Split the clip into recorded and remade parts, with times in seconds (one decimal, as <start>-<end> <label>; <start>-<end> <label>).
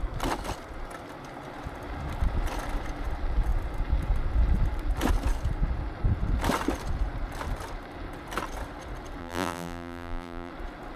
0.0-9.2 recorded; 9.2-10.5 remade; 10.5-11.0 recorded